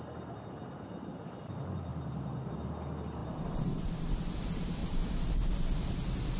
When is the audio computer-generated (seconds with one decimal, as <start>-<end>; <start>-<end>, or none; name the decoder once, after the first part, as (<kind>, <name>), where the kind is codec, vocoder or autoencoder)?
3.2-3.8 (vocoder, BigVGAN v2); 4.8-5.3